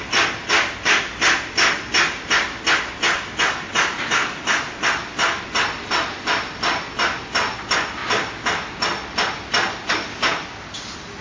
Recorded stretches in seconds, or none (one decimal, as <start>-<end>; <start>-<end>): 0.0-11.2